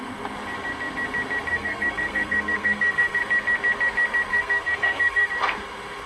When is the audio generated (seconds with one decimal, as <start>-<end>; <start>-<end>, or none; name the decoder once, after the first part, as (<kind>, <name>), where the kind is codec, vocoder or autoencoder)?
1.5-3.2 (codec, SNAC); 4.3-5.3